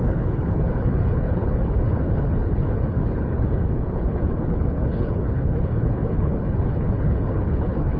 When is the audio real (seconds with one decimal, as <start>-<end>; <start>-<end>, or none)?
none